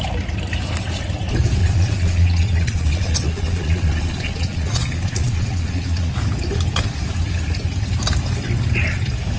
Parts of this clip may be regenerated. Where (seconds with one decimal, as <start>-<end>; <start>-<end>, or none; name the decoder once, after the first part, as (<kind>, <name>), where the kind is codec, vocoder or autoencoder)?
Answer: 1.6-6.1 (vocoder, Vocos)